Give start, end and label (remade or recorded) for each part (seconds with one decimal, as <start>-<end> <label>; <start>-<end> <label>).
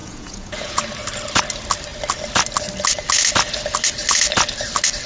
0.0-0.8 remade; 0.8-5.1 recorded